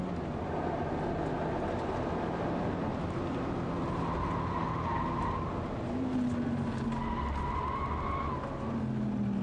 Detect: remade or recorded recorded